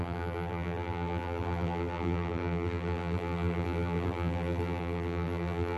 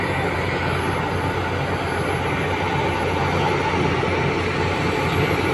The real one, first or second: second